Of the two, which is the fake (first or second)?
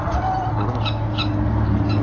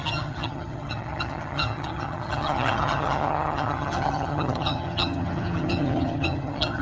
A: second